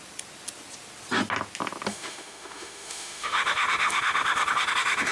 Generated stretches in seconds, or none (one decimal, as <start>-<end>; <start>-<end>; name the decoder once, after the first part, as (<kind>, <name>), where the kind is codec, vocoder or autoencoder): 1.9-5.1 (autoencoder, DAC-VAE)